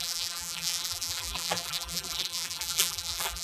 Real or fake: fake